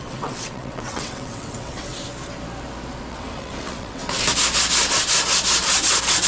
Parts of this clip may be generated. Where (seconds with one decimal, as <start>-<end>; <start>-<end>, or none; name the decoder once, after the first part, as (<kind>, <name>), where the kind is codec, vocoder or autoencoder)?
0.0-2.0 (vocoder, WaveNeXt); 3.1-4.0